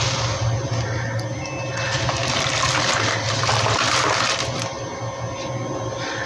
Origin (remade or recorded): recorded